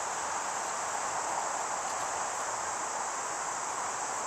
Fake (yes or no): no